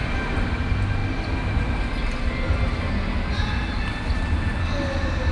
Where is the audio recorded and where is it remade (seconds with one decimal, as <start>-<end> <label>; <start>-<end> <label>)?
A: 0.0-5.3 recorded